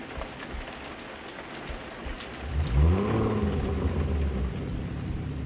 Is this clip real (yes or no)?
yes